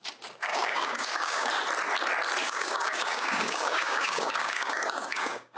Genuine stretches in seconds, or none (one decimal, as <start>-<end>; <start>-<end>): 0.0-0.5; 1.5-2.4